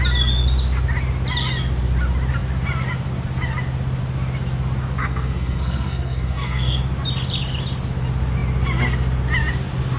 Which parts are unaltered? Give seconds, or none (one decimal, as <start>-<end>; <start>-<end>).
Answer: 0.0-5.0; 6.8-10.0